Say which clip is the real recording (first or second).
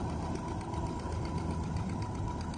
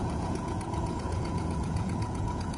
first